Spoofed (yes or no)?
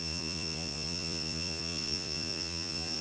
yes